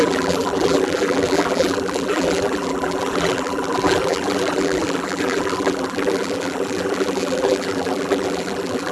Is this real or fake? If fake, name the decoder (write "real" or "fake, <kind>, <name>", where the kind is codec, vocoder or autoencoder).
fake, vocoder, BigVGAN v2